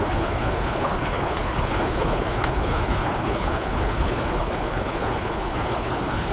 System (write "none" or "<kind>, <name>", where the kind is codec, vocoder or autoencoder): codec, HILCodec